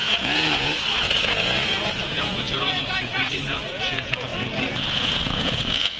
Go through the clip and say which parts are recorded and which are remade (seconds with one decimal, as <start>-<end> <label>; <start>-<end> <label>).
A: 0.0-4.3 remade; 4.3-4.9 recorded; 4.9-6.0 remade